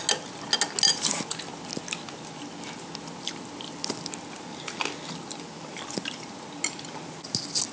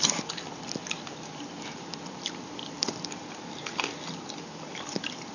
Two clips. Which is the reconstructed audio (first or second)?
second